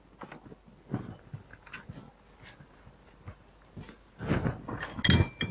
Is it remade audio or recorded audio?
recorded